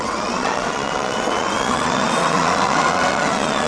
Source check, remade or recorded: remade